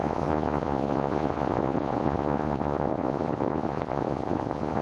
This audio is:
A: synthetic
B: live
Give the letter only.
A